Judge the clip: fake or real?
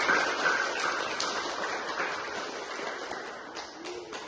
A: real